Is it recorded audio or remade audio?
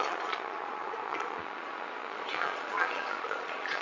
remade